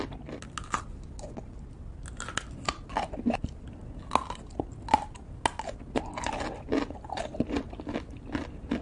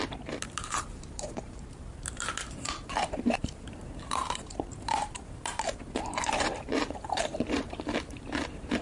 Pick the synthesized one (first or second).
second